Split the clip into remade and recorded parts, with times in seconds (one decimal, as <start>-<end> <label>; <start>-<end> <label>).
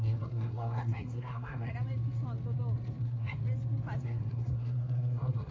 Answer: 0.0-1.7 remade; 1.7-3.0 recorded; 3.0-3.4 remade; 3.4-4.0 recorded; 4.0-5.5 remade